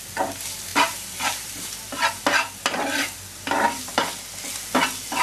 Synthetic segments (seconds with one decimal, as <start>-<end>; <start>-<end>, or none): 0.7-3.8